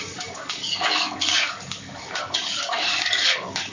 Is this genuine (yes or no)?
no